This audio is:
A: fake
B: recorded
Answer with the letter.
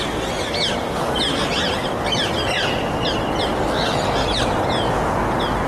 B